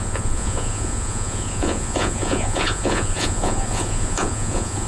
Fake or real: fake